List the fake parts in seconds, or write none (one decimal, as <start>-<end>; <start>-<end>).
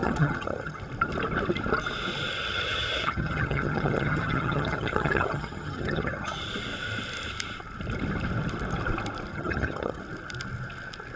0.0-0.8; 2.4-6.4; 9.3-10.0